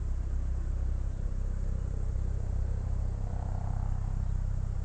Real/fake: fake